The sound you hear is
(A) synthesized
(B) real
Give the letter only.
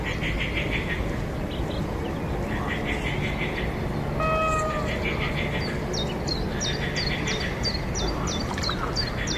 B